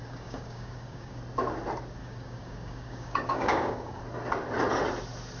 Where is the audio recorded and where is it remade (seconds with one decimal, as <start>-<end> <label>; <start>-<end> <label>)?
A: 0.0-1.2 remade; 1.2-2.0 recorded; 2.0-4.0 remade; 4.0-5.4 recorded